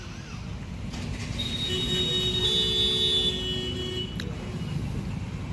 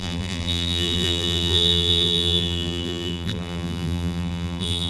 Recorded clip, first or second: first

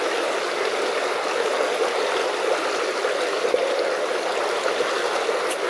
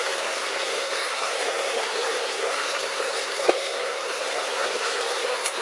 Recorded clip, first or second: first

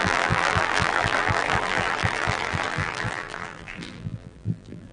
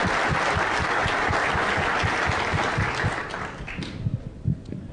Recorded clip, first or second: second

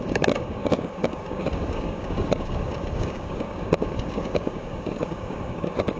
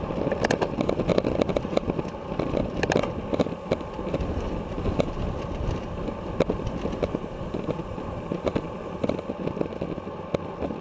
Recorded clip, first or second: second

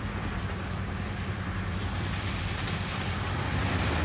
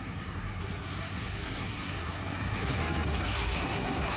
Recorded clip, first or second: first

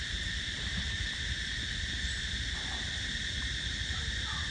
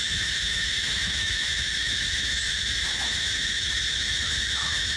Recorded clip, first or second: first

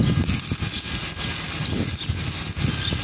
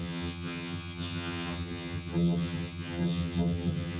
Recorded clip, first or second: first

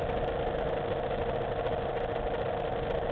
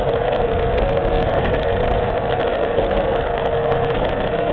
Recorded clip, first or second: first